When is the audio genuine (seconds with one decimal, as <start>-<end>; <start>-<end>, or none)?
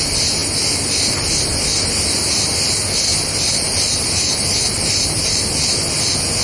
0.0-0.4; 1.1-3.1; 5.9-6.4